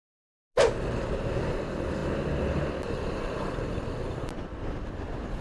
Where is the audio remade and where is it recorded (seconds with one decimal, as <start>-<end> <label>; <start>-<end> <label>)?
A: 0.0-5.4 recorded